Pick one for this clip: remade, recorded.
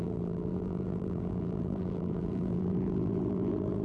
remade